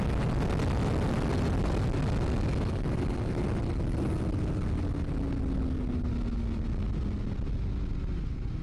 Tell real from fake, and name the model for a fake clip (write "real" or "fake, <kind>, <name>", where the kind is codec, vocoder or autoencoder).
real